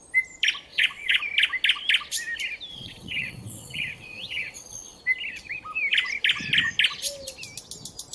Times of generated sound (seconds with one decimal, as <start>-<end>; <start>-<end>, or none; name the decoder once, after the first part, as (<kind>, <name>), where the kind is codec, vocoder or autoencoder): 0.7-1.2 (vocoder, WaveNeXt); 2.7-5.0